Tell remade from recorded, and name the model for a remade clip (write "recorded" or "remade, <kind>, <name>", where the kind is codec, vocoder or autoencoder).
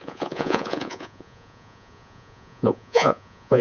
remade, vocoder, Vocos